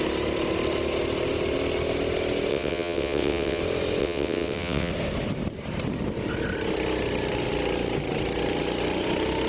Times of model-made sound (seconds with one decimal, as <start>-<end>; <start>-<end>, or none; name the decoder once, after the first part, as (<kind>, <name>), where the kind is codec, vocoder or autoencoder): 2.5-3.6 (vocoder, WaveNeXt); 4.0-4.9